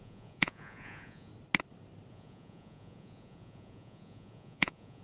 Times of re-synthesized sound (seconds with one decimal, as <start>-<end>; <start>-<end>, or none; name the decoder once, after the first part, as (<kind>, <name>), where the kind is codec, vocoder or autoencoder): 0.0-1.3 (vocoder, Vocos); 2.1-5.0

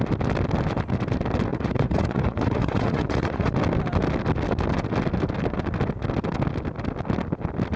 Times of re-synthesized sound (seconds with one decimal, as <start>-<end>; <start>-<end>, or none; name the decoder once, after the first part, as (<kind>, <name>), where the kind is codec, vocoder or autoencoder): 1.5-3.5 (vocoder, Vocos)

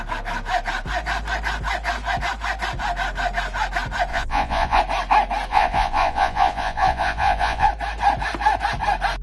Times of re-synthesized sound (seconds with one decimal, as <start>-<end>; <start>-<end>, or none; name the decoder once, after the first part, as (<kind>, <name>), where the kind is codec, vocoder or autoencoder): 4.1-4.8 (vocoder, Vocos); 5.5-7.7

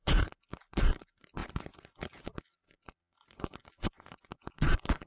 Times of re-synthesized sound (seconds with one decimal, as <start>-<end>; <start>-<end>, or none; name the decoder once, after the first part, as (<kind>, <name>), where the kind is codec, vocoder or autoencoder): 0.0-5.1 (vocoder, Vocos)

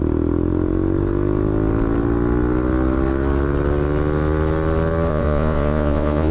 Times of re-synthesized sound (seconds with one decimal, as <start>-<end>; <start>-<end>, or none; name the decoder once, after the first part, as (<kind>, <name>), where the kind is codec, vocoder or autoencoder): 5.1-6.3 (vocoder, Vocos)

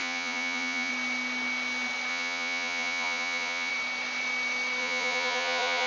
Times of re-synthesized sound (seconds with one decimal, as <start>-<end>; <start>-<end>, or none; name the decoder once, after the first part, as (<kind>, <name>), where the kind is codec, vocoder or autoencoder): 0.0-0.9 (vocoder, Vocos); 2.1-3.7; 4.8-5.9